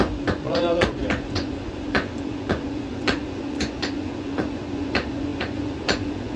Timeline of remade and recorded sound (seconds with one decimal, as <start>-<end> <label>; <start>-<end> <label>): 0.0-6.4 remade